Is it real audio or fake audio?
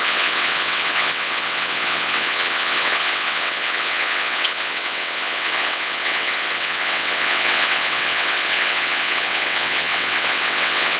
fake